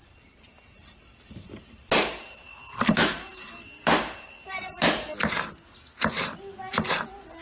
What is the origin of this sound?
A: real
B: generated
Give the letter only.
A